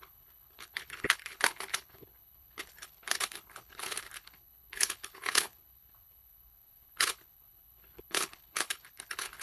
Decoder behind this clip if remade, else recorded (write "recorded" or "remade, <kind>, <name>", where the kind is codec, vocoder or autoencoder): remade, codec, HILCodec